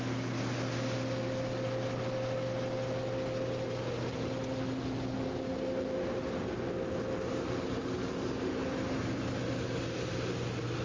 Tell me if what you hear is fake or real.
real